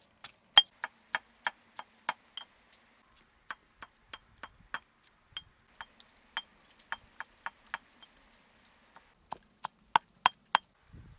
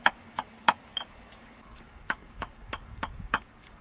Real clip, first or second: first